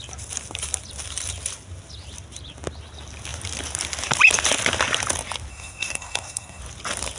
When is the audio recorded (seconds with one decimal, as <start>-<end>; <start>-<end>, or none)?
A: 0.0-5.5; 6.6-7.2